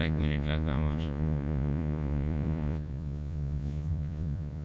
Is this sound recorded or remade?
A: remade